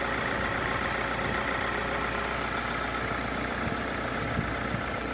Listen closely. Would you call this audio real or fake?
real